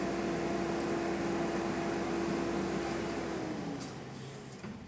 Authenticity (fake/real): real